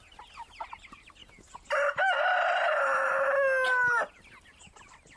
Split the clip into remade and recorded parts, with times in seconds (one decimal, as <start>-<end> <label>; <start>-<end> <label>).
0.0-5.2 recorded